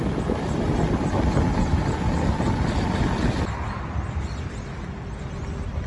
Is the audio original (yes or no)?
yes